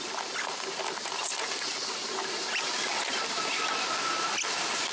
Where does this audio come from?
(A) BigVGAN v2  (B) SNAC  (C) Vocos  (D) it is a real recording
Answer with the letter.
D